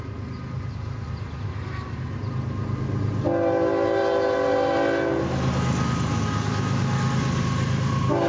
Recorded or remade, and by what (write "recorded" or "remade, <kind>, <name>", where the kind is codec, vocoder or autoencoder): recorded